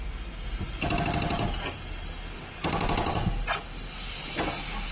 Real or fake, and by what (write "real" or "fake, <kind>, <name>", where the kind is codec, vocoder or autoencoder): real